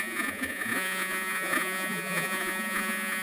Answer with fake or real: fake